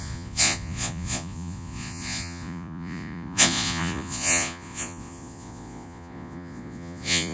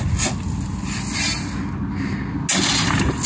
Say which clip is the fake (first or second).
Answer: first